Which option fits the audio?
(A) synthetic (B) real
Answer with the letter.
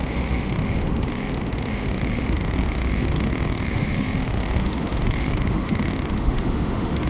A